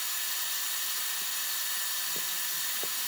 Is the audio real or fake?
real